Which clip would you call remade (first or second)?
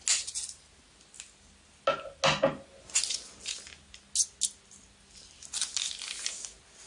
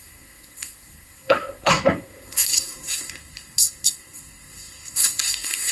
second